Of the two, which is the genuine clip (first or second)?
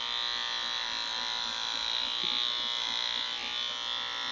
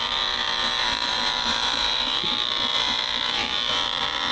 first